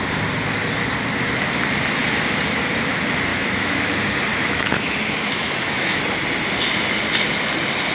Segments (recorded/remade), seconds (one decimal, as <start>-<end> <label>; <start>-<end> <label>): 0.0-3.3 recorded; 3.3-3.9 remade; 3.9-4.3 recorded; 4.3-6.0 remade; 6.0-7.9 recorded